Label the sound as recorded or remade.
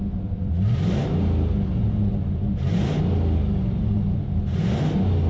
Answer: recorded